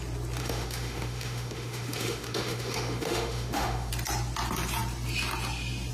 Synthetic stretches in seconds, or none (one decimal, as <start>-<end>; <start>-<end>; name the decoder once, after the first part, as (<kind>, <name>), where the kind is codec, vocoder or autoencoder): 0.4-3.9 (autoencoder, DAC-VAE)